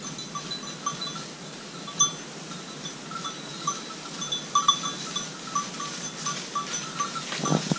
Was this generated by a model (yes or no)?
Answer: no